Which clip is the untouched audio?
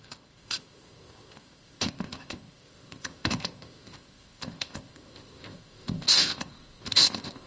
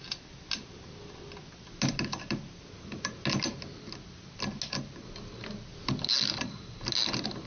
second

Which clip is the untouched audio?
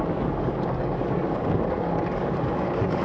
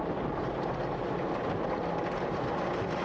second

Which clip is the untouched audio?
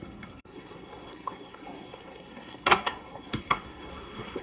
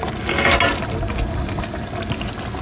second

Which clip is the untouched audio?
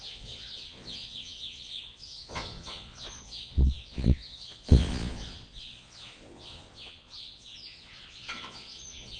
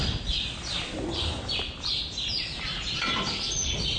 second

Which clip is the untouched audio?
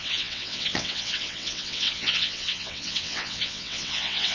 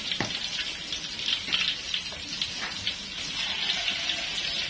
second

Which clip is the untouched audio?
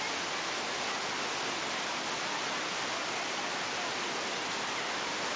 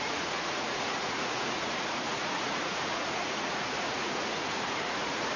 first